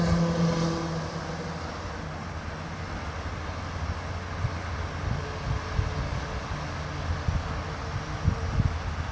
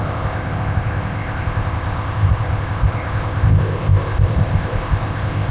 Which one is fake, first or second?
second